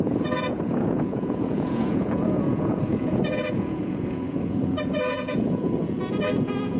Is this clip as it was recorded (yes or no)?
no